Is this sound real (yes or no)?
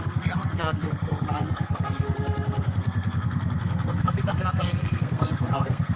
no